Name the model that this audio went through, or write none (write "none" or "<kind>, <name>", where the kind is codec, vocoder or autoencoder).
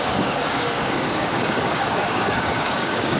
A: codec, DAC